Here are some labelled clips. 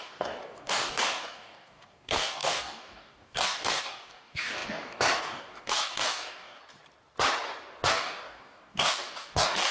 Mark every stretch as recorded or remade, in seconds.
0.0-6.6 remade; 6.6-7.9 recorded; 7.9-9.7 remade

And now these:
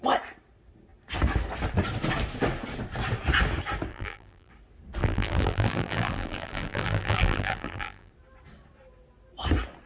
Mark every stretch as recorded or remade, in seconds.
0.0-3.9 recorded; 3.9-4.5 remade; 4.5-5.0 recorded; 5.0-8.1 remade; 8.1-9.9 recorded

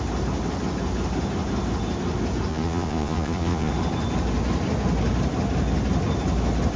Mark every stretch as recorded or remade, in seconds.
0.0-2.5 recorded; 2.5-3.7 remade; 3.7-6.8 recorded

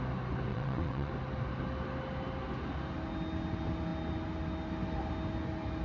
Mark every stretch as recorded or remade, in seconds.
0.0-0.5 recorded; 0.5-1.1 remade; 1.1-5.8 recorded

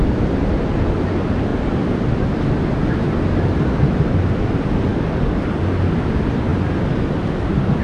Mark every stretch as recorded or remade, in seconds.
0.0-4.9 recorded; 4.9-5.6 remade; 5.6-7.8 recorded

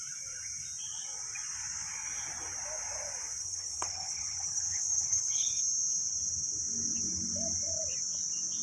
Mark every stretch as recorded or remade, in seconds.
0.0-3.4 recorded; 3.4-5.6 remade; 5.6-8.6 recorded

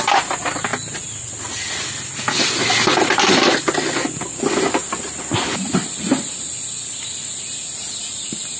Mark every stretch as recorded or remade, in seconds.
0.0-8.6 recorded

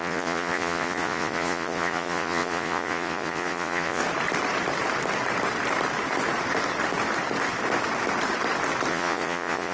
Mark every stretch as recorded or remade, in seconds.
0.0-4.0 remade; 4.0-8.9 recorded; 8.9-9.7 remade